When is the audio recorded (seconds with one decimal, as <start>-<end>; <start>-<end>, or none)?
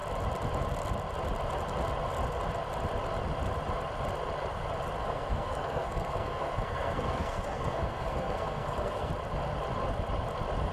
0.0-5.0; 9.1-10.7